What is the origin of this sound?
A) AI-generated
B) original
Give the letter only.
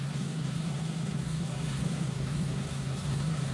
A